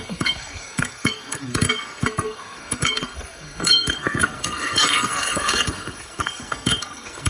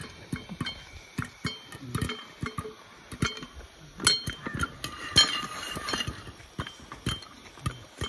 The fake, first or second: first